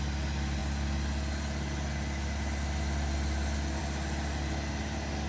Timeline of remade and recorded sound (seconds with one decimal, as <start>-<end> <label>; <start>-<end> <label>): 0.0-5.3 recorded